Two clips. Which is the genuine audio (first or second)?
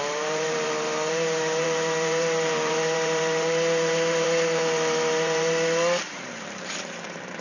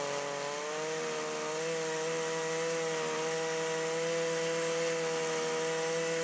second